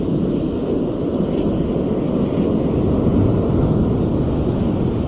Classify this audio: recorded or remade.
recorded